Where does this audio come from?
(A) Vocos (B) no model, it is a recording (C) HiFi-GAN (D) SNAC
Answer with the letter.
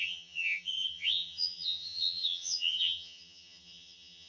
C